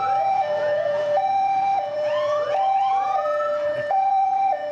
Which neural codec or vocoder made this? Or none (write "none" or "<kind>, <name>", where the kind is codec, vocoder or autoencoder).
vocoder, Vocos